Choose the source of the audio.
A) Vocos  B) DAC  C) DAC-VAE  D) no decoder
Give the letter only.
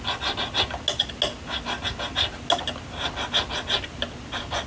D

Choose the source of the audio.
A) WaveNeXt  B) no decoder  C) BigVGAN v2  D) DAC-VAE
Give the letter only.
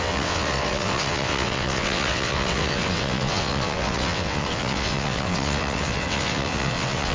A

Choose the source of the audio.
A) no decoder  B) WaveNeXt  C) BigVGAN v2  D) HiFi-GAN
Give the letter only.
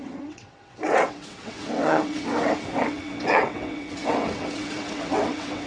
B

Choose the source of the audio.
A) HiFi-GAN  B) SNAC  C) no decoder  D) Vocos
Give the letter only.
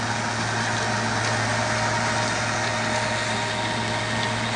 C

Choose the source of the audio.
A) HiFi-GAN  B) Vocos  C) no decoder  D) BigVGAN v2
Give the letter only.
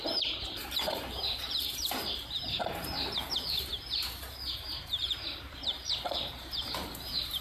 D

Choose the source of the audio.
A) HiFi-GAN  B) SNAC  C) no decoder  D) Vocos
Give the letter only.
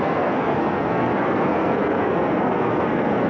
B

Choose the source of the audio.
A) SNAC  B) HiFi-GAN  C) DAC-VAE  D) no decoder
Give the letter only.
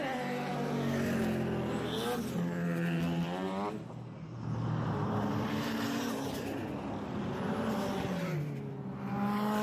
D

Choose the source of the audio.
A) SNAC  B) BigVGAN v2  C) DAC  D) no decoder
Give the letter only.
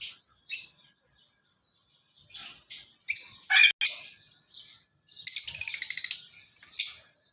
D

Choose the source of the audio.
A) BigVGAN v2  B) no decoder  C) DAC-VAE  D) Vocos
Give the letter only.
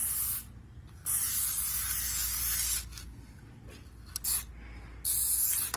B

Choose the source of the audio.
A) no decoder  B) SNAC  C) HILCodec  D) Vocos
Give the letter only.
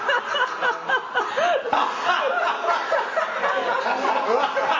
A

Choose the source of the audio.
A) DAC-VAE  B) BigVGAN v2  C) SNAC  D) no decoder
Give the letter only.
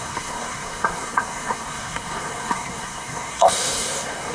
C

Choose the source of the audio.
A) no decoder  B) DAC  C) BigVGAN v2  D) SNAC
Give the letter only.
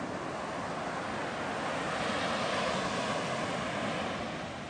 A